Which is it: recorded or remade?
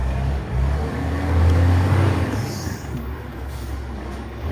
remade